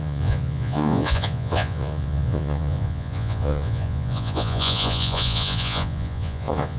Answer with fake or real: fake